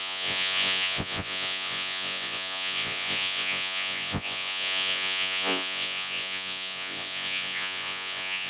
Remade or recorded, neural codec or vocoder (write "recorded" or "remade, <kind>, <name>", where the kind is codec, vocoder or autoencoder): remade, vocoder, Vocos